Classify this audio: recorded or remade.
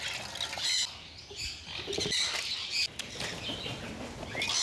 recorded